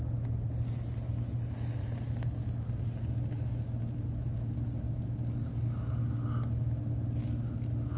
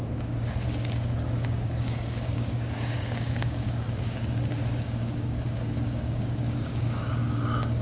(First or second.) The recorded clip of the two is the first